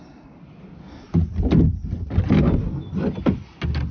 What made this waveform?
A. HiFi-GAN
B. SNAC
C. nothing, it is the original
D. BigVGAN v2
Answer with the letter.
C